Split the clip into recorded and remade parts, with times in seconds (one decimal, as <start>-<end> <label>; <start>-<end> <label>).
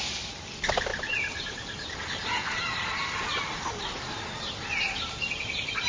0.0-5.9 recorded